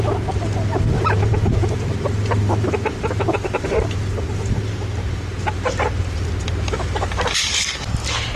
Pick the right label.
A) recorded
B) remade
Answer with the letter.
B